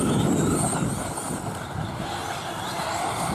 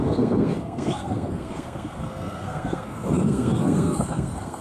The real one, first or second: first